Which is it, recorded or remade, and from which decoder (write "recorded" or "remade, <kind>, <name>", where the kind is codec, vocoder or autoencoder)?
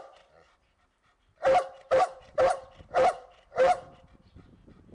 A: remade, vocoder, BigVGAN v2